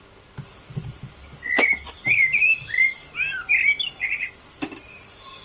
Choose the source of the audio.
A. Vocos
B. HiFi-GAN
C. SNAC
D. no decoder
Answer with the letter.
D